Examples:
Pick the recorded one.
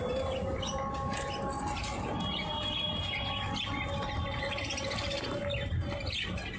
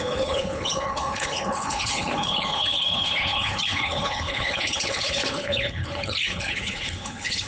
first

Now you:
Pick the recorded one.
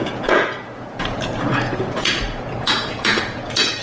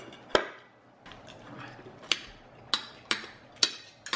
second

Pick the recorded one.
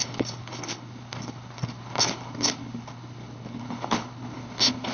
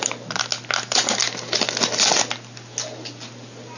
second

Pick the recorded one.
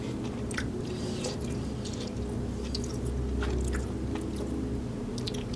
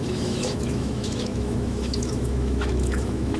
first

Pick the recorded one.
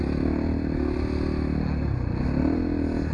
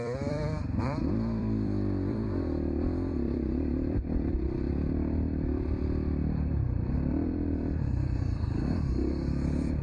first